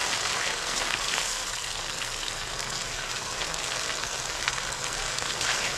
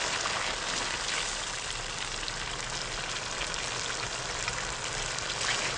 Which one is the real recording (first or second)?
second